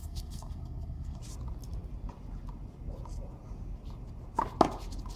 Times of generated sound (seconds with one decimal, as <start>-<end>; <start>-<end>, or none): 0.0-1.2